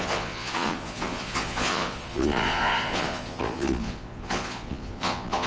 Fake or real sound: fake